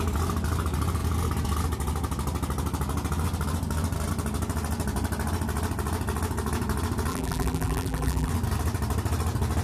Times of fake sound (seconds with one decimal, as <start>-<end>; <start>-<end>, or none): 7.1-8.3